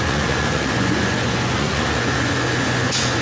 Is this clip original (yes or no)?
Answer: no